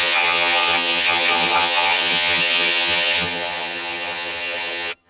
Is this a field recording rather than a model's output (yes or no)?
no